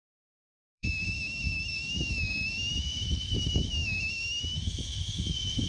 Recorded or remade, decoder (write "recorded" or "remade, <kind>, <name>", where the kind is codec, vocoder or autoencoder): remade, autoencoder, DAC-VAE